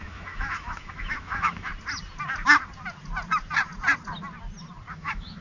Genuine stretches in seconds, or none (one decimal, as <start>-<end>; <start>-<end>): 1.7-4.9